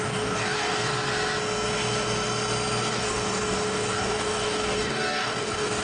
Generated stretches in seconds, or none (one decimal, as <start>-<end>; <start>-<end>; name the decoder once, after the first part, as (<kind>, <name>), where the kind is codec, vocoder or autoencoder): 0.0-0.9 (codec, DAC); 2.9-5.8